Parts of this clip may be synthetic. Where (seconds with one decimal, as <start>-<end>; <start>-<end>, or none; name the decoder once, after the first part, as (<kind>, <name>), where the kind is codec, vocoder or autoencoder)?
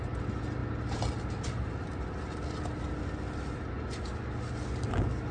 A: none